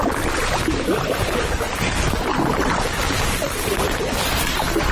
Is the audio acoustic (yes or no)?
yes